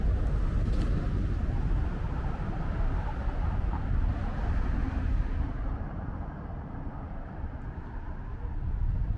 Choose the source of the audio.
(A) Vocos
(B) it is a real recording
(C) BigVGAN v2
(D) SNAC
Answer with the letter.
B